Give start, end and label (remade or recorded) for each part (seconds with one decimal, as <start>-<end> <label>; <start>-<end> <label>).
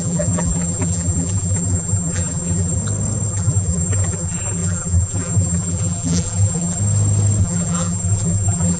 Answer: 0.0-2.8 remade; 2.8-3.3 recorded; 3.3-6.8 remade; 6.8-7.4 recorded; 7.4-8.8 remade